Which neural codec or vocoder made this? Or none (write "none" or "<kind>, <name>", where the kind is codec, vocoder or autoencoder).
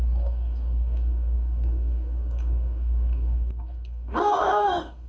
codec, DAC